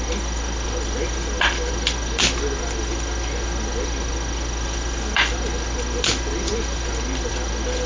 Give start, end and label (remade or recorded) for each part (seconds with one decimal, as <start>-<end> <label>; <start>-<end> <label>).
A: 0.0-7.9 recorded